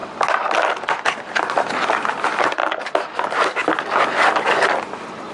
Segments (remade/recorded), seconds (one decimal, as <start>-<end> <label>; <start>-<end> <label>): 0.0-5.3 recorded